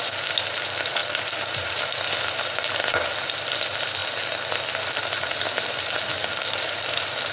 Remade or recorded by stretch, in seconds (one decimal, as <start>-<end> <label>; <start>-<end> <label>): 0.0-7.3 recorded